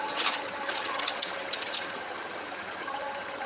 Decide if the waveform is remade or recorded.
remade